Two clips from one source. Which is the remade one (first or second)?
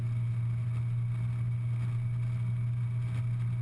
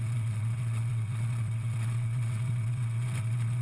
second